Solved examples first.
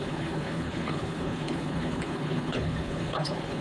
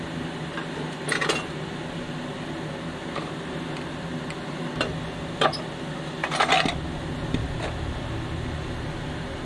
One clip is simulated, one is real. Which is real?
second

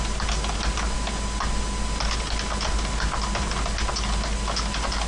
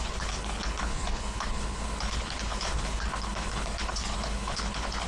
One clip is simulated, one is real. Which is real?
first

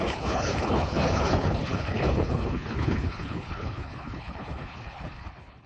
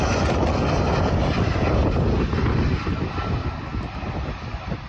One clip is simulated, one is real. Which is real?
second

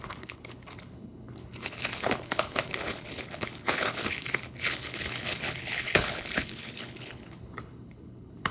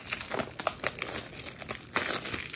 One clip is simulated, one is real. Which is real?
second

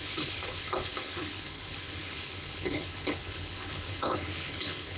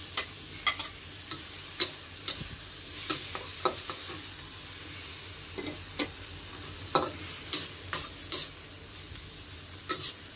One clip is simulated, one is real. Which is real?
second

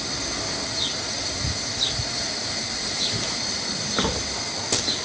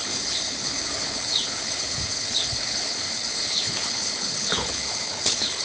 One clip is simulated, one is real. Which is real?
first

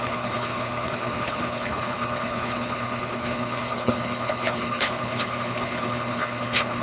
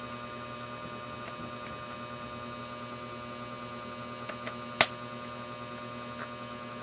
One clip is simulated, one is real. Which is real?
second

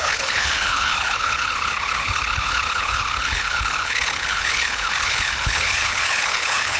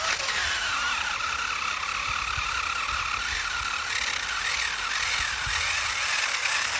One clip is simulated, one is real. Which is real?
second